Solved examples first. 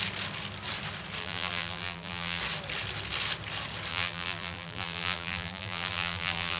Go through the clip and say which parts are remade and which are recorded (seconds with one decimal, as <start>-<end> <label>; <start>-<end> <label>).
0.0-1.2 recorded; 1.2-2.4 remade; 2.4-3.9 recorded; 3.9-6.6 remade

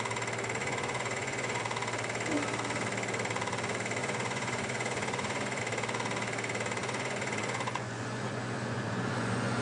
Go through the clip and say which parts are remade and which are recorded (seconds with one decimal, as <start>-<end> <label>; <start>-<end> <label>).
0.0-0.6 recorded; 0.6-1.6 remade; 1.6-4.0 recorded; 4.0-5.6 remade; 5.6-6.8 recorded; 6.8-9.6 remade

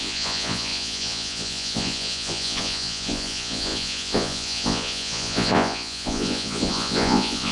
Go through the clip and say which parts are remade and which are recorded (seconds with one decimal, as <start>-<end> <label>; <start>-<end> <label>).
0.0-7.5 remade